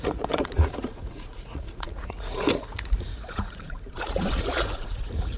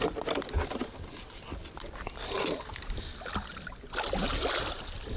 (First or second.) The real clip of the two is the second